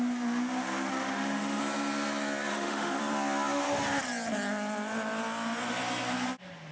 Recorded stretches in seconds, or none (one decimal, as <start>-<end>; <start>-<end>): 0.0-0.9; 1.6-2.5; 3.0-6.7

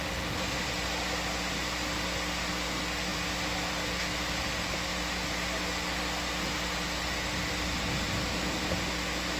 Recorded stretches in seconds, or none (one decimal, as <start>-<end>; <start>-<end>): 0.0-9.4

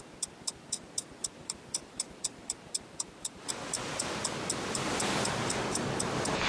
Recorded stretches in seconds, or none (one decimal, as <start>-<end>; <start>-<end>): 0.0-1.2; 3.5-6.5

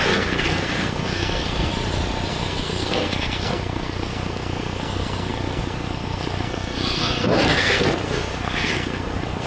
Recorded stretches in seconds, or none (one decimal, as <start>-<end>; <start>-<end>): 1.7-2.3

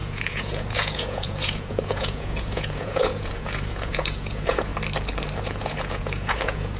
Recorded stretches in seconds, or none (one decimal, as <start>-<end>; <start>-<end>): 4.7-5.4

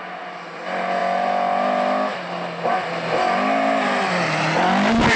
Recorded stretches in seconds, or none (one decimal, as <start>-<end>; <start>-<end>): 0.0-5.2